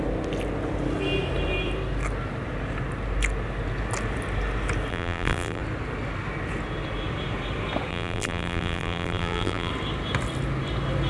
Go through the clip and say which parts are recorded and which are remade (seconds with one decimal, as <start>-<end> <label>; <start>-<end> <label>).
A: 0.0-4.9 recorded; 4.9-5.6 remade; 5.6-7.9 recorded; 7.9-9.7 remade; 9.7-11.1 recorded